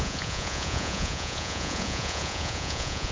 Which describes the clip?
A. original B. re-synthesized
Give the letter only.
B